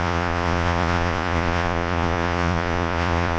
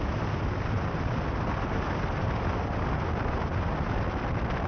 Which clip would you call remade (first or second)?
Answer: first